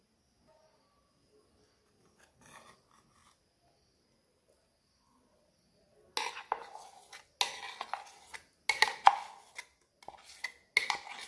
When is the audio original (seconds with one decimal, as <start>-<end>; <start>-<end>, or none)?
0.0-11.3